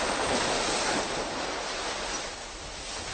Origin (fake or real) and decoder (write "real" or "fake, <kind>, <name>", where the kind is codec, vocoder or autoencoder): real